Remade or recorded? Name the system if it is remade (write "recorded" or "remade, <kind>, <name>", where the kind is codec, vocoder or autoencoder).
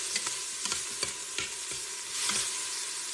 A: recorded